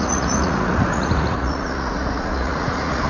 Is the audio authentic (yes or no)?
no